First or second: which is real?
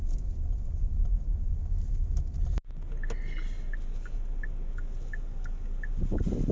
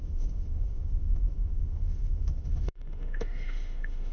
first